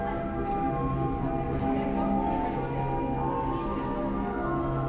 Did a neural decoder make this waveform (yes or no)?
no